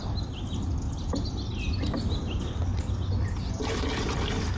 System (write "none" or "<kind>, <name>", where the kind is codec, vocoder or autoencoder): none